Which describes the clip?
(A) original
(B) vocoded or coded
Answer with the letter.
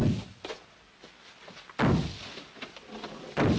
A